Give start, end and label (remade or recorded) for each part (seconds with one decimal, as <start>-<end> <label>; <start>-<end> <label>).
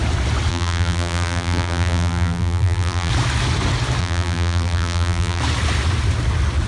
0.0-0.5 recorded; 0.5-3.1 remade; 3.1-4.0 recorded; 4.0-5.4 remade; 5.4-6.7 recorded